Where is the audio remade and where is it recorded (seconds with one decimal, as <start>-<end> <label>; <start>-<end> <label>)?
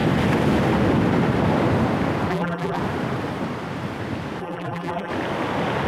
0.0-2.3 recorded; 2.3-2.8 remade; 2.8-4.4 recorded; 4.4-5.1 remade; 5.1-5.9 recorded